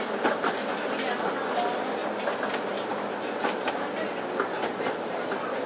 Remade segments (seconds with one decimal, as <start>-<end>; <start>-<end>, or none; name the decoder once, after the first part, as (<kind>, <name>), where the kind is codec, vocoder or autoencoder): none